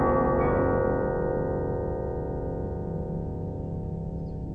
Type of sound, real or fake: real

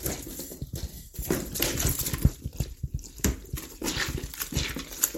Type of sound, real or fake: real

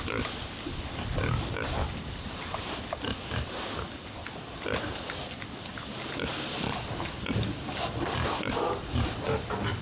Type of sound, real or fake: real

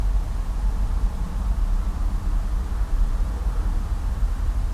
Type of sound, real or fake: real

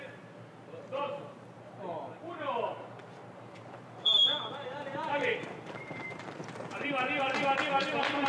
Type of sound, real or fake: fake